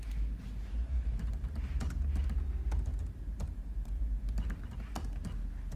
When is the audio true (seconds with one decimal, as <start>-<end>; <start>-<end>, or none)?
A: 0.0-0.6; 1.7-2.9; 4.0-5.8

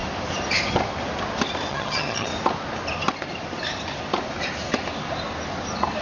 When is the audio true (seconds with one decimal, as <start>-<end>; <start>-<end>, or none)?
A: 0.0-1.7; 2.3-6.0

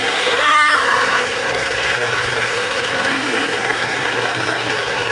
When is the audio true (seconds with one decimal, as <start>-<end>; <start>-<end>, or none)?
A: none

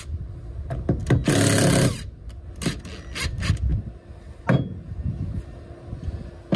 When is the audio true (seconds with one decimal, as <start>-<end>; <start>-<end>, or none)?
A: 0.0-6.6

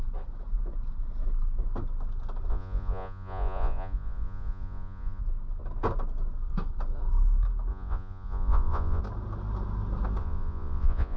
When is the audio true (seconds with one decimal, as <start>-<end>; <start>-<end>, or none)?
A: 0.0-2.5; 5.2-7.7; 9.0-10.2

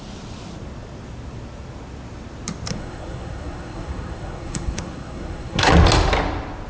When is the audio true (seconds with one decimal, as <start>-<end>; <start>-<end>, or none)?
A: 0.0-2.7; 5.7-6.7

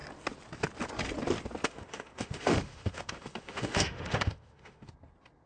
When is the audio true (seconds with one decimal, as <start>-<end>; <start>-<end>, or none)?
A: 0.0-1.6; 4.9-5.5

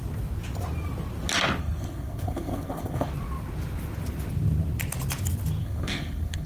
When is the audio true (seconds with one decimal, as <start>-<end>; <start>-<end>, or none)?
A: 0.0-1.6; 3.1-5.6